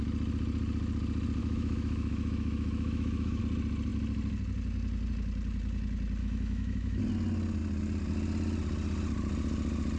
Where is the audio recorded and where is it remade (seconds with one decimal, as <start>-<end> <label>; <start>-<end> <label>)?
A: 0.0-1.4 recorded; 1.4-3.4 remade; 3.4-6.2 recorded; 6.2-7.0 remade; 7.0-10.0 recorded